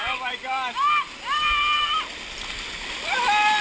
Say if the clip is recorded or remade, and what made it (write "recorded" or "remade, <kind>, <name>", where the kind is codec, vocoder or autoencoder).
remade, vocoder, BigVGAN v2